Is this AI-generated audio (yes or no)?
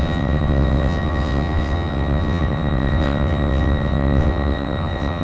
yes